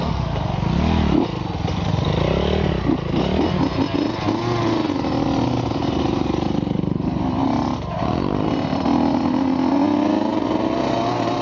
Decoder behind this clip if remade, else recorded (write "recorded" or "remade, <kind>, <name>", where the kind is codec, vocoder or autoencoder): recorded